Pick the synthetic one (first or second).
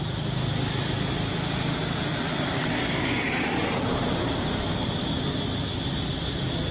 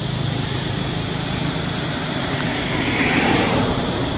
second